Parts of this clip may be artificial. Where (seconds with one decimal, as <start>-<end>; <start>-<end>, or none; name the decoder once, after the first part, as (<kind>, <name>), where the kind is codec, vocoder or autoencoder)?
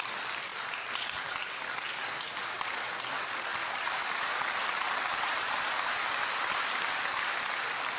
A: 0.5-1.2 (vocoder, BigVGAN v2); 3.5-7.2